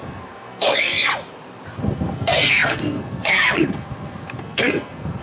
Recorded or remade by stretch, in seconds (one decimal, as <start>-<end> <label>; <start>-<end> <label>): 0.0-1.1 remade; 1.1-1.8 recorded; 1.8-5.2 remade